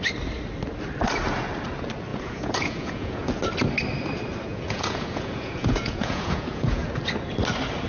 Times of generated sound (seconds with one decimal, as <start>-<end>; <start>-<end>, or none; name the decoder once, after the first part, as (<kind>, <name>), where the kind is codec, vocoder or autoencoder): 2.1-3.3 (vocoder, Vocos); 4.5-6.9